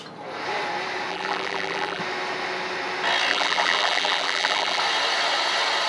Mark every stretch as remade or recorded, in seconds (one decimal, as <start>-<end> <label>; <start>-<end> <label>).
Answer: 0.0-1.1 recorded; 1.1-2.0 remade; 2.0-3.3 recorded; 3.3-4.8 remade; 4.8-5.9 recorded